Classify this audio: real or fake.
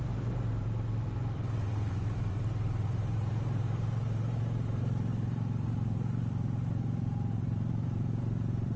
fake